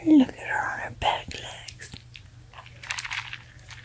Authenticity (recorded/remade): recorded